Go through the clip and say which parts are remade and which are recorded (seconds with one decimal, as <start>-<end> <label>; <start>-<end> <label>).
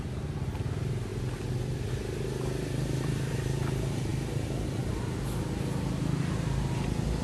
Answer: 0.0-7.2 recorded